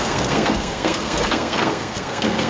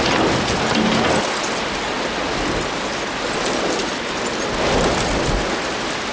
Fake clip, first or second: first